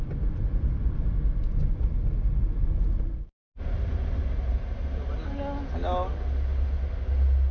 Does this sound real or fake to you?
real